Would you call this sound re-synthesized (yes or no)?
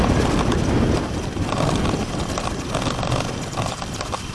no